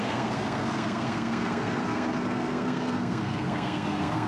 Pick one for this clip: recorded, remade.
remade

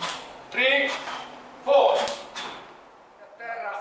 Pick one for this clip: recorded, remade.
recorded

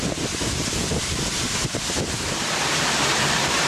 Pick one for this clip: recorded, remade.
remade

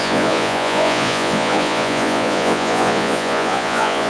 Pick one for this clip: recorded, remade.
remade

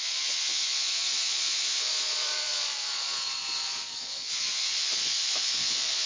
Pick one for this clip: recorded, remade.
remade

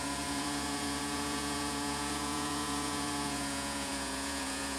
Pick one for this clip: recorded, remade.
remade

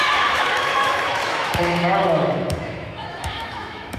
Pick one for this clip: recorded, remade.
remade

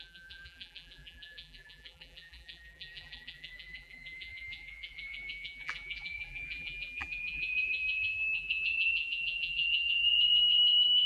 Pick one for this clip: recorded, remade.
remade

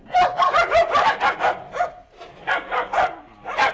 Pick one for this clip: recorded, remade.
recorded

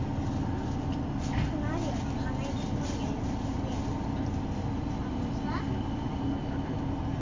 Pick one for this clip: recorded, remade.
recorded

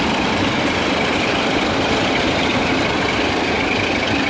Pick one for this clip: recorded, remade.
recorded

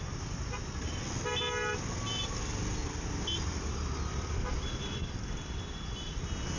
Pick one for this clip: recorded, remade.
recorded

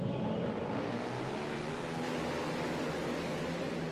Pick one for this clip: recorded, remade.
recorded